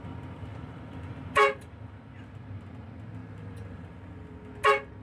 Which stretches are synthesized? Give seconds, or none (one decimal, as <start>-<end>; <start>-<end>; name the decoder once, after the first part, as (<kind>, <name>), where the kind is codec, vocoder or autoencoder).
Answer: 0.5-2.1 (vocoder, BigVGAN v2); 3.2-3.9

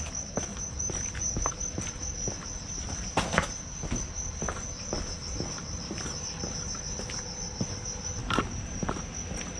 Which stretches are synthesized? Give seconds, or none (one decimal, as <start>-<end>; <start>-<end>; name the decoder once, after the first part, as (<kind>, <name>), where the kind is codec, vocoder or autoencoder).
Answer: 0.5-1.5 (vocoder, BigVGAN v2); 8.2-9.0